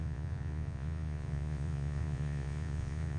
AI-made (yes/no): yes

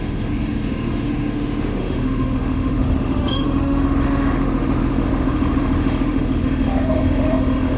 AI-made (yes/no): yes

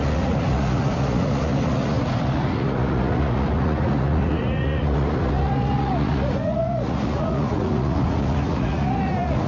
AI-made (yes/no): yes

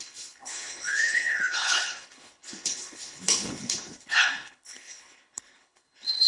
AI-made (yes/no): yes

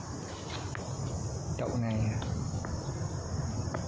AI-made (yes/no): no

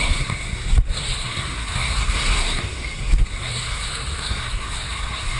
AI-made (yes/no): yes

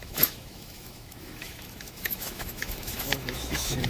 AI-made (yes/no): yes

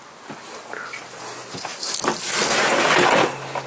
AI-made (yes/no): no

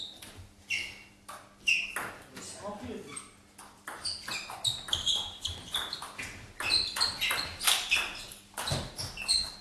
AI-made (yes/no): no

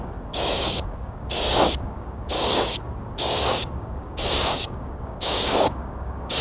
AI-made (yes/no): yes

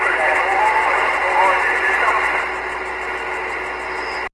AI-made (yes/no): no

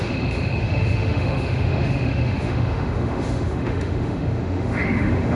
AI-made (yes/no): yes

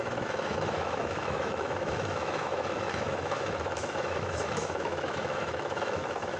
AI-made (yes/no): yes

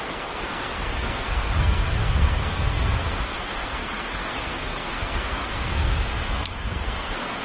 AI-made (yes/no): yes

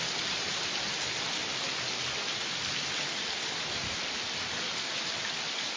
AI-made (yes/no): no